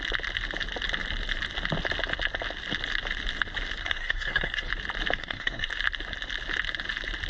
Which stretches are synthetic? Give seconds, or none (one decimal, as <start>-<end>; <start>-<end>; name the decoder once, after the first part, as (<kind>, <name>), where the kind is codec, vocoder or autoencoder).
3.8-4.7 (codec, SNAC); 5.2-5.7